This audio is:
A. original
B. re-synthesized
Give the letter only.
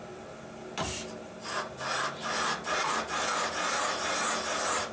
A